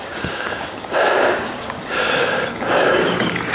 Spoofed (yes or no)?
yes